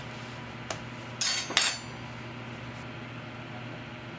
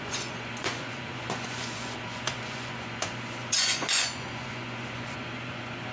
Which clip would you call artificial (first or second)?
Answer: second